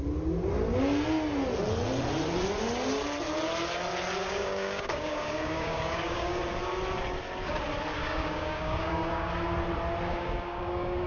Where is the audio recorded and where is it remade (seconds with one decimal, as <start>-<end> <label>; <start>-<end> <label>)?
0.0-4.2 recorded; 4.2-6.4 remade; 6.4-8.0 recorded; 8.0-9.3 remade; 9.3-10.1 recorded; 10.1-11.1 remade